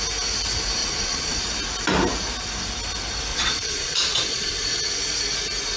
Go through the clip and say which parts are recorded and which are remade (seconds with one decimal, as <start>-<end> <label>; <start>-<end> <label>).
0.0-0.8 recorded; 0.8-1.4 remade; 1.4-3.3 recorded; 3.3-4.5 remade; 4.5-5.8 recorded